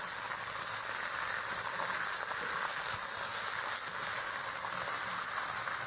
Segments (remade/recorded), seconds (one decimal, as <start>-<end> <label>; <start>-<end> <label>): 0.0-5.9 recorded